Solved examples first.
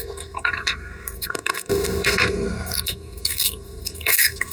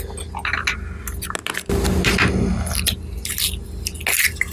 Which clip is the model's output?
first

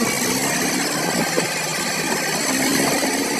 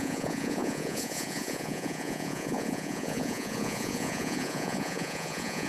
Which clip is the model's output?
second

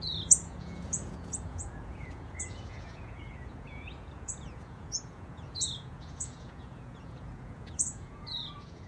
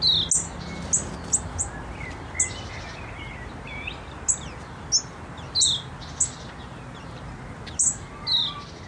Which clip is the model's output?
first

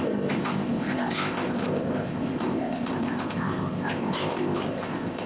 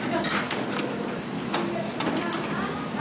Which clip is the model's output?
first